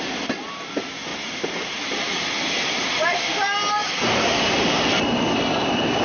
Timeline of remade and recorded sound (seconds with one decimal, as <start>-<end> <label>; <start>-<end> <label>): 0.0-1.1 recorded; 1.1-2.5 remade; 2.5-3.8 recorded; 3.8-4.5 remade; 4.5-6.0 recorded